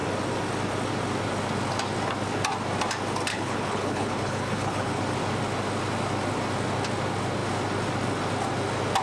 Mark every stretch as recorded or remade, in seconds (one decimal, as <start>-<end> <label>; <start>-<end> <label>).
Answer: 0.0-3.3 recorded; 3.3-5.0 remade; 5.0-9.0 recorded